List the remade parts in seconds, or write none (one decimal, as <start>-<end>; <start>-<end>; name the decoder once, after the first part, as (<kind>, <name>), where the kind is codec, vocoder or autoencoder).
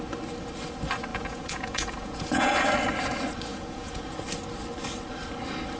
1.1-2.7 (vocoder, Vocos); 3.5-4.2